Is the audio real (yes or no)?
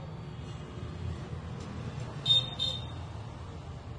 yes